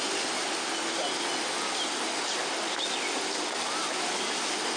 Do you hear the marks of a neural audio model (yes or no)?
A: no